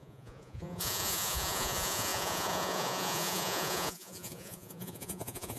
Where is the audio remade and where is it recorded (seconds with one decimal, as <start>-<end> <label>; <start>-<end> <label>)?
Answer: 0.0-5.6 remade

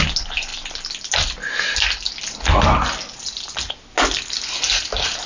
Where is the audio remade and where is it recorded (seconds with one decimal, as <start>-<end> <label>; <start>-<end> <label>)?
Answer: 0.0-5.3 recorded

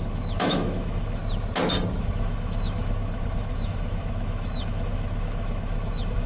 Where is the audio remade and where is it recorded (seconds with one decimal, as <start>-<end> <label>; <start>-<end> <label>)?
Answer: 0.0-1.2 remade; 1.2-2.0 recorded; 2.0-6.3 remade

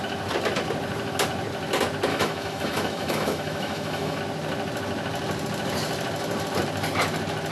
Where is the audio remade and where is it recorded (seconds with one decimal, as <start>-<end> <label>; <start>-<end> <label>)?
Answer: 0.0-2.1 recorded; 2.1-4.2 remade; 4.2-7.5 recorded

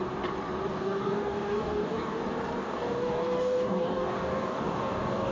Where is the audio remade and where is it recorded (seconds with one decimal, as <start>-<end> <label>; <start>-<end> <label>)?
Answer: 0.0-0.7 recorded; 0.7-2.2 remade; 2.2-2.6 recorded; 2.6-5.3 remade

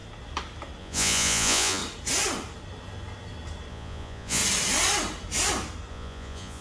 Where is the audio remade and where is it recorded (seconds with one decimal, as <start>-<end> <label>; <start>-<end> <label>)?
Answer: 0.0-0.8 recorded; 0.8-1.8 remade; 1.8-3.7 recorded; 3.7-4.4 remade; 4.4-5.9 recorded; 5.9-6.6 remade

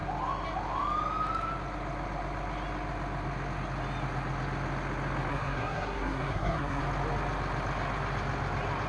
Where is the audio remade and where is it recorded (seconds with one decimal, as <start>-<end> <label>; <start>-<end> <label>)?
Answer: 0.0-5.3 recorded; 5.3-6.8 remade; 6.8-8.9 recorded